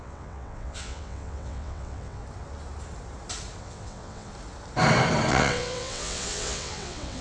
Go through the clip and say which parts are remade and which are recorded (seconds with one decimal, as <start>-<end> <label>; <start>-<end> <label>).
0.0-2.2 remade; 2.2-3.6 recorded; 3.6-4.3 remade; 4.3-5.3 recorded; 5.3-7.2 remade